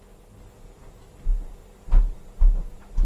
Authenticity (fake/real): real